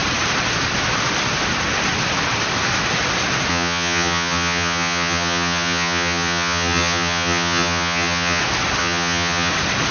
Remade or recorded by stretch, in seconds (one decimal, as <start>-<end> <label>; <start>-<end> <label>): 0.0-3.5 recorded; 3.5-8.4 remade; 8.4-8.8 recorded; 8.8-9.5 remade; 9.5-9.9 recorded